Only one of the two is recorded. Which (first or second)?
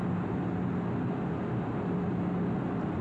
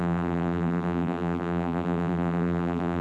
first